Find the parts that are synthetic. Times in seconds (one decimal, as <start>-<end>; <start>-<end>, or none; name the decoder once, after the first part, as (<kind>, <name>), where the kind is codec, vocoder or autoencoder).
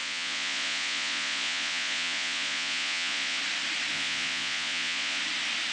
0.0-3.4 (vocoder, Vocos); 3.9-5.2